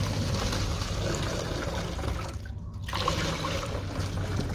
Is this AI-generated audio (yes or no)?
no